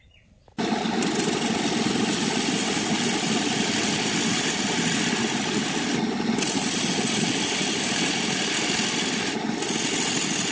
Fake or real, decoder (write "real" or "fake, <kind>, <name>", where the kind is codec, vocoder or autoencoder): real